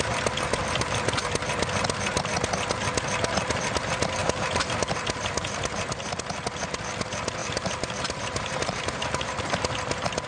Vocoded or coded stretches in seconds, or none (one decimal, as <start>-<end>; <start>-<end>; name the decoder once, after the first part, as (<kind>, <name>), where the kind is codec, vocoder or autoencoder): 0.6-1.2 (vocoder, BigVGAN v2); 4.2-5.8; 7.4-9.4